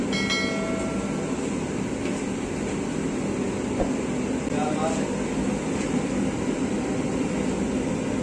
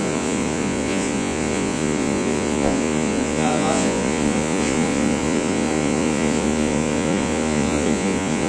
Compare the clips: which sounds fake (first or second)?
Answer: second